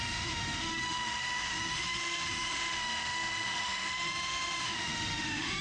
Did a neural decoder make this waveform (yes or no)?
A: yes